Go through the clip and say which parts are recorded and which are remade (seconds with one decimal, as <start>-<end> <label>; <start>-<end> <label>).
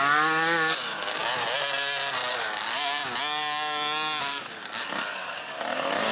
0.0-1.2 remade; 1.2-2.3 recorded; 2.3-3.0 remade; 3.0-4.2 recorded; 4.2-6.1 remade